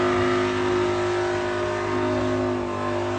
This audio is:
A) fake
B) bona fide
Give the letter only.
B